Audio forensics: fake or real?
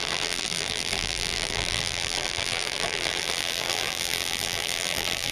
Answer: fake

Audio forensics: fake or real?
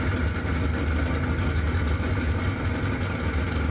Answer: real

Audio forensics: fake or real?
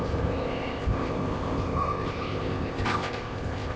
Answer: fake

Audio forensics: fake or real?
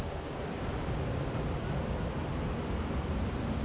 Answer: real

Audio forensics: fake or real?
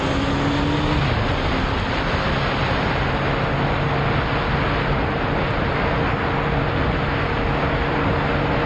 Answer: real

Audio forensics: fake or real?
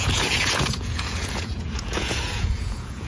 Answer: fake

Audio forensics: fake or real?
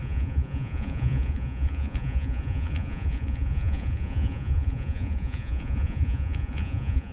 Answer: fake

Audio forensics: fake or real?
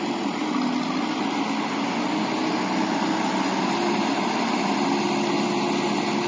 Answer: real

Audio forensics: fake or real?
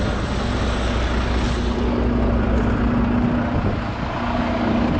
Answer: real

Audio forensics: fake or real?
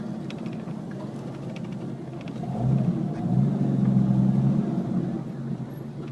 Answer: real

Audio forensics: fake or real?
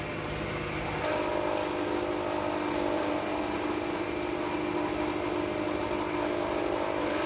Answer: real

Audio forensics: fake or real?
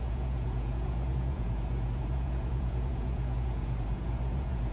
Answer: fake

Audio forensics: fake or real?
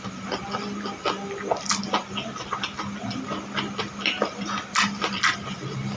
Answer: real